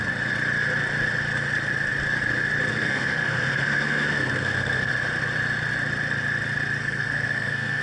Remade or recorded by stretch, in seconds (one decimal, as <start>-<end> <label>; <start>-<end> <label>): 0.0-2.7 recorded; 2.7-4.9 remade; 4.9-6.8 recorded; 6.8-7.8 remade